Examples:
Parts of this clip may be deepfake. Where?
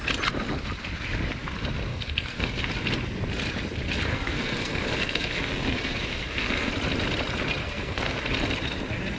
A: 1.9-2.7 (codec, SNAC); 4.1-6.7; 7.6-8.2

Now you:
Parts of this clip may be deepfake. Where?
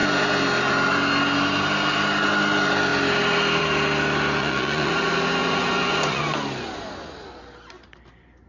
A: 4.4-4.9 (vocoder, Vocos); 5.4-6.2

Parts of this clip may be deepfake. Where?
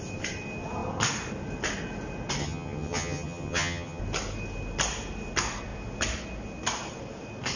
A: 2.4-4.0 (vocoder, HiFi-GAN)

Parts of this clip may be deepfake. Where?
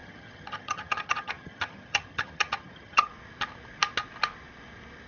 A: 0.0-3.1 (vocoder, HiFi-GAN)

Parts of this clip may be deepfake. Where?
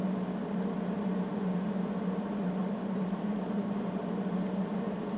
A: 2.6-3.6 (vocoder, BigVGAN v2)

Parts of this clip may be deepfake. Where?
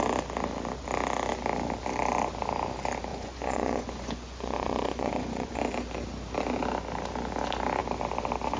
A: 3.1-5.6 (vocoder, Vocos)